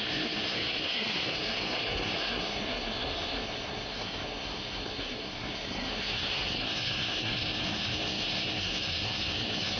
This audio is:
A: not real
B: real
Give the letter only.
A